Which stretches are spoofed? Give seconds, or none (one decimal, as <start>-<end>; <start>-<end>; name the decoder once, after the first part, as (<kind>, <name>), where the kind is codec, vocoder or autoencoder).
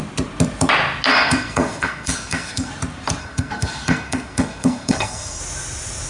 1.1-2.7 (codec, SNAC); 3.2-5.4